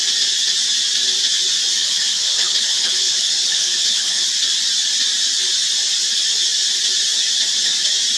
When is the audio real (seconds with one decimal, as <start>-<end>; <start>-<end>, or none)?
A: 0.0-1.8; 4.2-8.2